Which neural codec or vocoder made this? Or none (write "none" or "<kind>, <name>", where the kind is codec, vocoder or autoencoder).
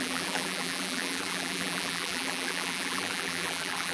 vocoder, BigVGAN v2